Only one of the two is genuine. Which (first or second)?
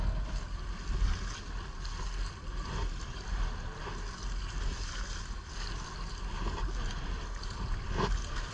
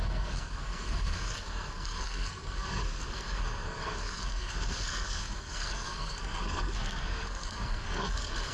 first